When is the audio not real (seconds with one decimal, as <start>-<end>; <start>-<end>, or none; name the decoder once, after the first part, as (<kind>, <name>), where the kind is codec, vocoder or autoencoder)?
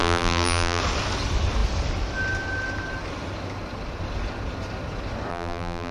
0.0-0.8 (vocoder, BigVGAN v2); 5.3-5.9